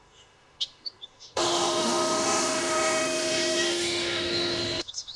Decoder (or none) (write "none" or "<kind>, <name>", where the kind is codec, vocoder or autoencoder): autoencoder, DAC-VAE